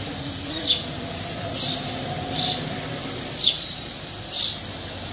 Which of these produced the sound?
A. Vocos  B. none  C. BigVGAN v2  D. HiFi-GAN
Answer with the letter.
C